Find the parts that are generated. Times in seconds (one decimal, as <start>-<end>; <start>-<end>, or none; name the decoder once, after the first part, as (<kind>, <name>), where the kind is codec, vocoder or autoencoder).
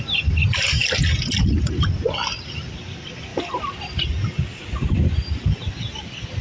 none